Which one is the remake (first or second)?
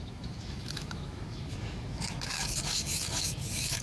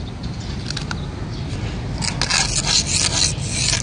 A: first